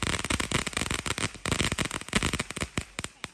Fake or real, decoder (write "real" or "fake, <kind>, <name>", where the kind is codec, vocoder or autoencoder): real